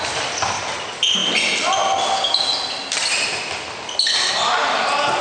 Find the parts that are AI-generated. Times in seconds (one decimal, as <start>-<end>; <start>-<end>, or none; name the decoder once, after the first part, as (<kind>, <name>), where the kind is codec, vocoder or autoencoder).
none